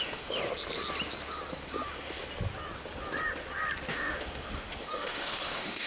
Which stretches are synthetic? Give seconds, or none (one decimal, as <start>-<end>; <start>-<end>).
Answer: 0.0-0.4; 3.9-5.9